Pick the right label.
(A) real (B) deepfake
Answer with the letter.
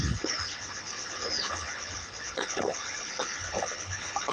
B